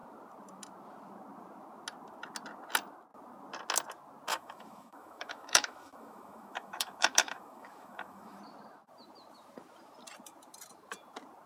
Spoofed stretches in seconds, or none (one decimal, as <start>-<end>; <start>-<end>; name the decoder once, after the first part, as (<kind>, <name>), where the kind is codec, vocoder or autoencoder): 4.3-8.4 (autoencoder, DAC-VAE)